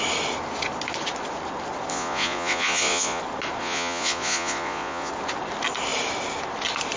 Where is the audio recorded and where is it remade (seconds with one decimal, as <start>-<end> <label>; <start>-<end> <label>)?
0.0-1.9 recorded; 1.9-3.2 remade; 3.2-3.6 recorded; 3.6-5.1 remade; 5.1-7.0 recorded